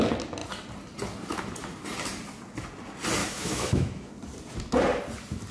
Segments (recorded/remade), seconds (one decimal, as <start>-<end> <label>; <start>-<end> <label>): 0.0-3.2 recorded; 3.2-4.1 remade; 4.1-5.5 recorded